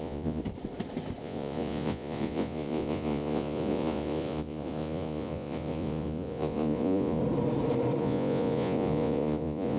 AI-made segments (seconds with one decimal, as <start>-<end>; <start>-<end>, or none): 0.0-0.4; 1.2-7.2; 8.0-9.8